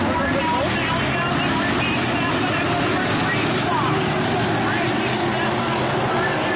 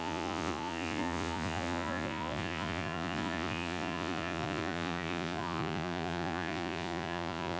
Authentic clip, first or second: first